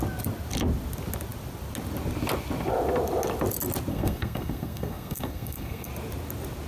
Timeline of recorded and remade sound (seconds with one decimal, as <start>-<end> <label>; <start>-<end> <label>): 0.0-3.9 recorded; 3.9-5.9 remade; 5.9-6.7 recorded

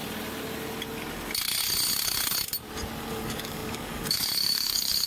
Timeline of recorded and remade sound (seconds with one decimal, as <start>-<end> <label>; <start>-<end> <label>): 0.0-3.1 recorded; 3.1-5.1 remade

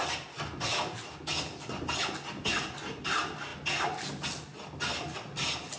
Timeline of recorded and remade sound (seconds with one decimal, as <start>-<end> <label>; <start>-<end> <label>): 0.0-5.8 recorded

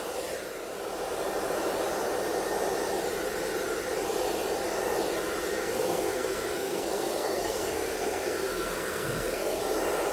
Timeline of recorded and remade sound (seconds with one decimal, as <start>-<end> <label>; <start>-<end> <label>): 0.0-5.4 recorded; 5.4-9.6 remade; 9.6-10.1 recorded

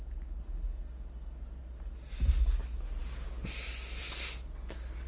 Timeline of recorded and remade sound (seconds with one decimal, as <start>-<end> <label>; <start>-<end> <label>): 0.0-5.1 recorded

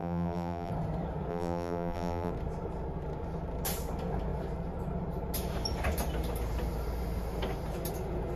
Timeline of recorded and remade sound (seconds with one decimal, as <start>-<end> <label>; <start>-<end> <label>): 0.0-0.7 remade; 0.7-1.3 recorded; 1.3-2.3 remade; 2.3-8.4 recorded

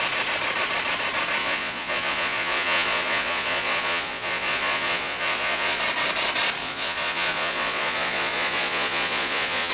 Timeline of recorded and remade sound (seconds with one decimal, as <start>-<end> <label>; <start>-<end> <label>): 0.0-1.4 recorded; 1.4-5.8 remade; 5.8-6.6 recorded; 6.6-9.7 remade